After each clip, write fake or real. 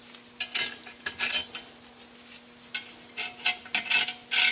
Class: real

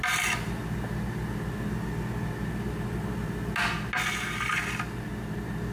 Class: real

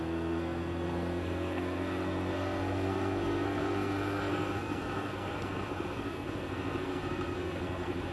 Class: fake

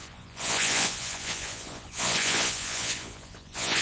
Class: fake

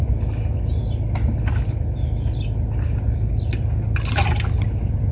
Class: real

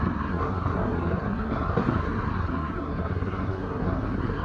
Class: fake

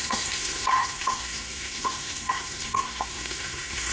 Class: fake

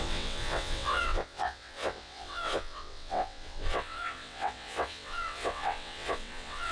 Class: fake